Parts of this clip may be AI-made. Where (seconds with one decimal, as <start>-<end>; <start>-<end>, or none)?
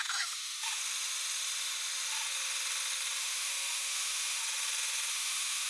0.0-0.8; 3.2-4.4; 5.1-5.7